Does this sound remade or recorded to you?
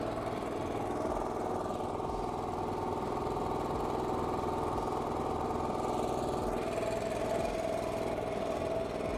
recorded